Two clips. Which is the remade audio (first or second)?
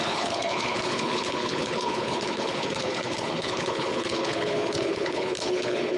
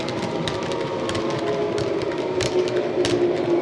first